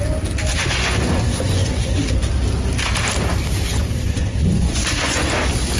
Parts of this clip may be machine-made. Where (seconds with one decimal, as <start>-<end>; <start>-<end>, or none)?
0.5-2.0; 3.7-5.3